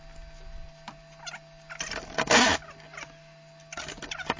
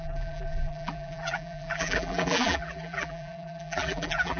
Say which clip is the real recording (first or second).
first